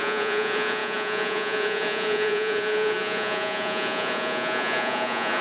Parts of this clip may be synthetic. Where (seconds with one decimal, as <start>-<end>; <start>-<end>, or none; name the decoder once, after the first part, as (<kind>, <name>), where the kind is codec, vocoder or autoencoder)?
0.0-5.4 (vocoder, Vocos)